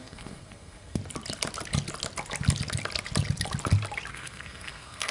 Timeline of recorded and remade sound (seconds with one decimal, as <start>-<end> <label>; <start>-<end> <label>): 0.0-1.0 remade; 1.0-4.1 recorded; 4.1-5.1 remade